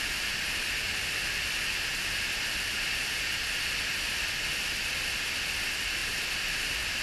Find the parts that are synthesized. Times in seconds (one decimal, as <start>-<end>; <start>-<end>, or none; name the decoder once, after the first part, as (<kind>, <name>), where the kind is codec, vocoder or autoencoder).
none